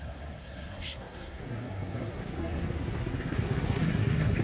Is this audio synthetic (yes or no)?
yes